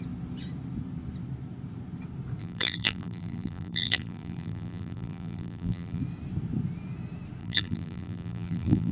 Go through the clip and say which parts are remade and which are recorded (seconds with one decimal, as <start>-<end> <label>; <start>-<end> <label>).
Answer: 0.0-2.4 recorded; 2.4-6.0 remade; 6.0-7.4 recorded; 7.4-8.9 remade

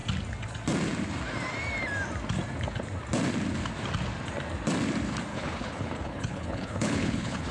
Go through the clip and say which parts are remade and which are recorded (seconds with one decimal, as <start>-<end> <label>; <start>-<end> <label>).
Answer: 0.0-5.3 recorded; 5.3-7.5 remade

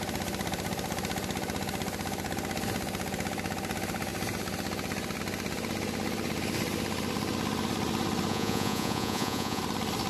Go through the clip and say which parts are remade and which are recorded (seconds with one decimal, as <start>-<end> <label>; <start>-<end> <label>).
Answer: 0.0-8.3 recorded; 8.3-9.6 remade; 9.6-10.1 recorded

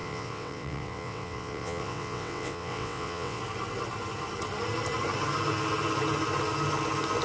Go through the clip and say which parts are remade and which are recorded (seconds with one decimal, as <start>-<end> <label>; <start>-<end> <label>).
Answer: 0.0-3.4 remade; 3.4-7.2 recorded